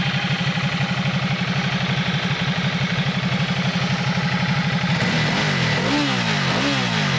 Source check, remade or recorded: recorded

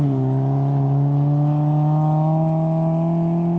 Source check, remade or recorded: recorded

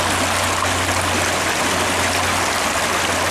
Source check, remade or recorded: recorded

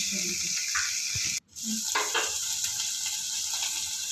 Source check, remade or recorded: remade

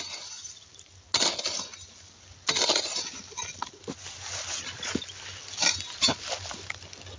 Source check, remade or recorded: recorded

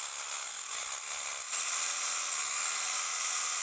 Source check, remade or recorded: recorded